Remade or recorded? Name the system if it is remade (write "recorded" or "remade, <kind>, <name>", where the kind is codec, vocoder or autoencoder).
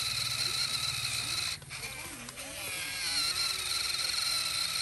recorded